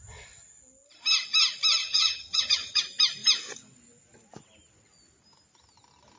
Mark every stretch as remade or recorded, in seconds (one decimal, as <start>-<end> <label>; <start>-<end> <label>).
0.0-1.8 recorded; 1.8-2.8 remade; 2.8-6.2 recorded